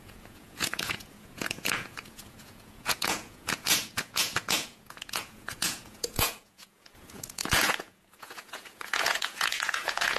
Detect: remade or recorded remade